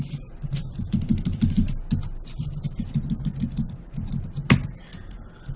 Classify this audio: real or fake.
real